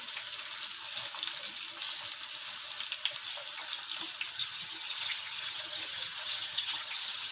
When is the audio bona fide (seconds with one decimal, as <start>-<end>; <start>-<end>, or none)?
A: 0.0-4.4